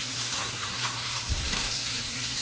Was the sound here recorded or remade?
remade